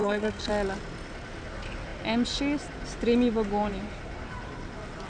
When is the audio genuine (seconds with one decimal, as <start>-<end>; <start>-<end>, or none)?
0.5-5.1